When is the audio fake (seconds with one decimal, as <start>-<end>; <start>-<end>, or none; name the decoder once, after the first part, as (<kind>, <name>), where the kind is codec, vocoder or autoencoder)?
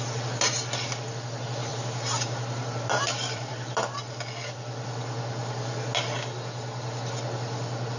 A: 1.7-3.5 (vocoder, BigVGAN v2)